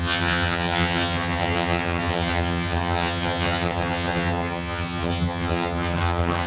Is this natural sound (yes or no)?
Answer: no